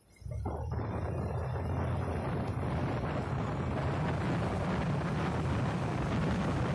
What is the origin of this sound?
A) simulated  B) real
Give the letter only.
B